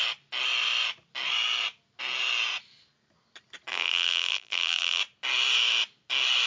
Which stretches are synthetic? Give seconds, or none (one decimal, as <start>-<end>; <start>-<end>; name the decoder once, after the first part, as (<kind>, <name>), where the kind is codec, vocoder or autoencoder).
3.7-5.0 (vocoder, BigVGAN v2)